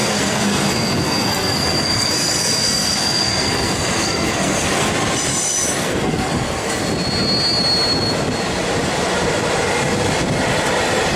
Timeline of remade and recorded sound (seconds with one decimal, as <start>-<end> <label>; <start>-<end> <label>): 0.0-4.9 remade; 4.9-5.8 recorded; 5.8-6.7 remade; 6.7-11.2 recorded